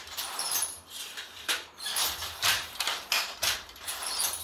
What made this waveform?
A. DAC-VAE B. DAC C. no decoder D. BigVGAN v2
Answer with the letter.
D